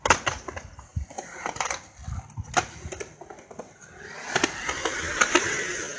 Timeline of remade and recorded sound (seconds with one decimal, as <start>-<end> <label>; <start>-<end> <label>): 0.0-6.0 recorded